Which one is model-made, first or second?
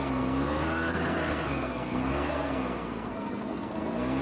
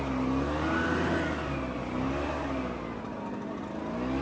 first